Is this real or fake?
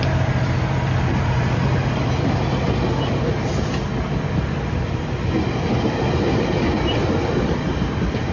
real